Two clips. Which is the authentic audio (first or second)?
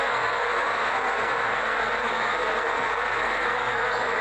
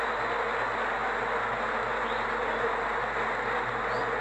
second